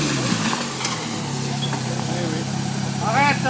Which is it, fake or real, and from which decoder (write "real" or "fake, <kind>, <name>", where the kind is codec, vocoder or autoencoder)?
real